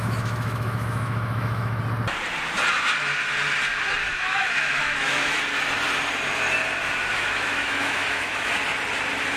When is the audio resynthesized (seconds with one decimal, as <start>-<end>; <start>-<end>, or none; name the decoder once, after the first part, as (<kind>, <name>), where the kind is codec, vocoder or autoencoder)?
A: 0.0-1.8 (autoencoder, DAC-VAE); 4.0-5.4; 7.1-8.5